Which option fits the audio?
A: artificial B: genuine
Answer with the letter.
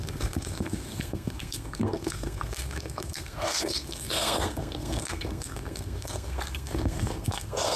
A